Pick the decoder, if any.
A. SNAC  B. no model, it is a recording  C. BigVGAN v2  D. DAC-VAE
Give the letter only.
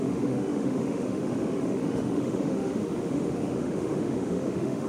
D